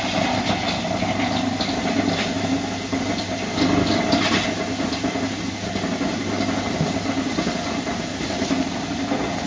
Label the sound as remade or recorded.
recorded